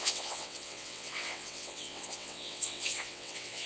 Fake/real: fake